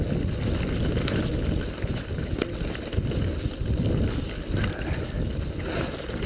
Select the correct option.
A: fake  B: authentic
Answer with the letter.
B